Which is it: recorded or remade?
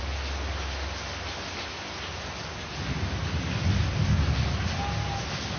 recorded